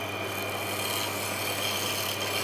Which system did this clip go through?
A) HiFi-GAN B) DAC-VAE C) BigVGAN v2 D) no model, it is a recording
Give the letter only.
D